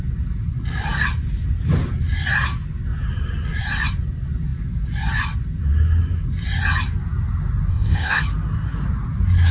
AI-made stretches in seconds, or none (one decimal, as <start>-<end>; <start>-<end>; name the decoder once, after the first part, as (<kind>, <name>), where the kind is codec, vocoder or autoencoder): 7.7-8.2 (codec, ZipCodec)